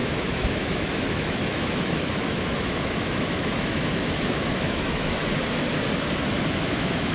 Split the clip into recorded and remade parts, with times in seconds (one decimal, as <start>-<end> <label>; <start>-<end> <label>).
0.0-5.2 remade; 5.2-6.5 recorded; 6.5-7.1 remade